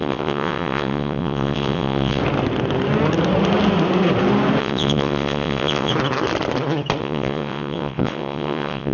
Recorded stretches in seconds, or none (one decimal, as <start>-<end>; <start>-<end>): 2.2-4.6; 5.9-7.0